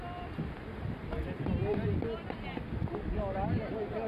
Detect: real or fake real